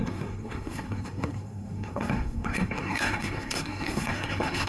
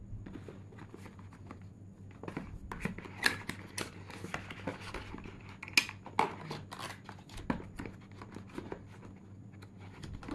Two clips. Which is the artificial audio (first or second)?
first